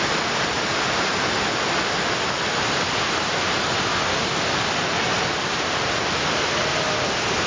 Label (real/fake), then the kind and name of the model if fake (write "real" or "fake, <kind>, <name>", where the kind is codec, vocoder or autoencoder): real